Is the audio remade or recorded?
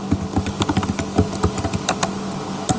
recorded